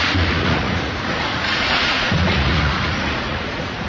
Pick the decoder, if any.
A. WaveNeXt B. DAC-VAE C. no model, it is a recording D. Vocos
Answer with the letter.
D